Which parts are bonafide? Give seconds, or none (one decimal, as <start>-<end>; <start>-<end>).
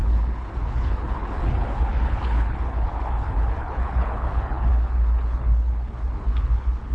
none